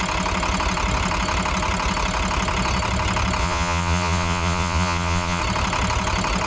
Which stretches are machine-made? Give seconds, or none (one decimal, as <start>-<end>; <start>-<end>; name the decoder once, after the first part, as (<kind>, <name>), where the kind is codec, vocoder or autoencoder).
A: 3.4-5.4 (vocoder, Vocos)